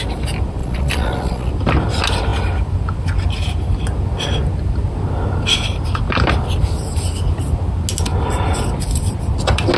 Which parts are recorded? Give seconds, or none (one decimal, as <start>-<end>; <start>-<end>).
0.0-0.6; 1.5-9.8